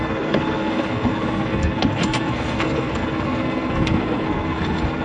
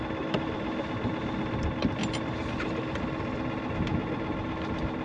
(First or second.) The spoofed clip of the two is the first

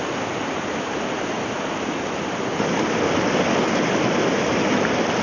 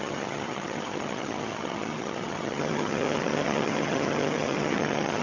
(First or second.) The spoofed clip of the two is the second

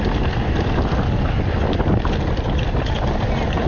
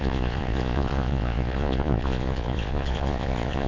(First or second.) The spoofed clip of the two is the second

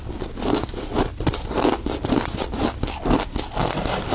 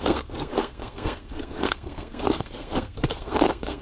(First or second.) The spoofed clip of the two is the second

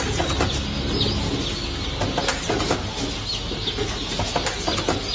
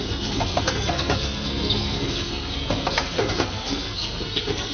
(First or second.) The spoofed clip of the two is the second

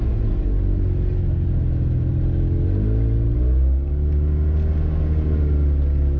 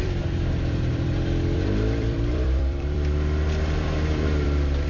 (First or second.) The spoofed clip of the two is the second